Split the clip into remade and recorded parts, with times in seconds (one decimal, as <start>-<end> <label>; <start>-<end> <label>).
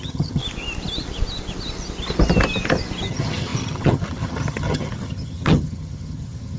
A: 0.0-0.4 remade; 0.4-3.1 recorded; 3.1-6.6 remade